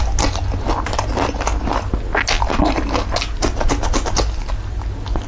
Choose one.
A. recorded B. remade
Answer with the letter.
A